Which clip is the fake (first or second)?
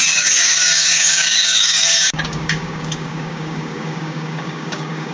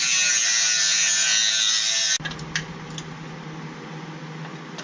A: first